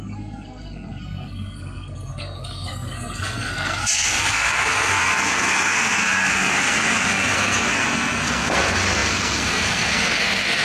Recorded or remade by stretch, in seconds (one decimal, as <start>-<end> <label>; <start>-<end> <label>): 0.0-10.6 remade